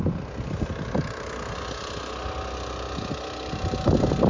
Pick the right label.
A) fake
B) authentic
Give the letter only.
B